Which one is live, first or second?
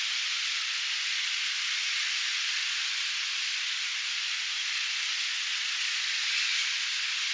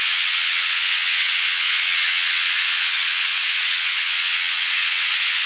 first